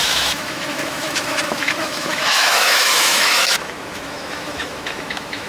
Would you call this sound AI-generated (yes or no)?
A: yes